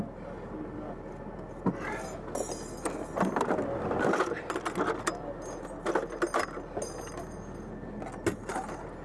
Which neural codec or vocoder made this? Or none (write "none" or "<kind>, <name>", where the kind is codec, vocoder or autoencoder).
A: none